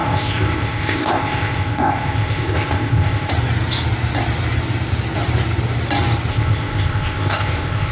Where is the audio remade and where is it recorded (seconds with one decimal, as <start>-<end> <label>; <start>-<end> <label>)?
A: 0.0-3.3 remade; 3.3-6.3 recorded; 6.3-7.9 remade